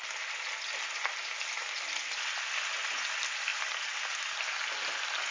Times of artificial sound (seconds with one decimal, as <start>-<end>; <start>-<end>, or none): none